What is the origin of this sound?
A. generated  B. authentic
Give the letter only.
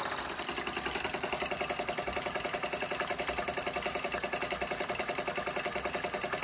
A